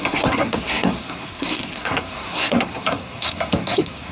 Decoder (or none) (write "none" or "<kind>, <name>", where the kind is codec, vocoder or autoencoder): codec, SNAC